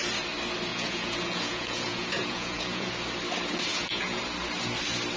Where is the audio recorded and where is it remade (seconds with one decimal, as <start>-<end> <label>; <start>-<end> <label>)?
0.0-0.7 recorded; 0.7-2.9 remade; 2.9-3.7 recorded; 3.7-4.2 remade; 4.2-5.2 recorded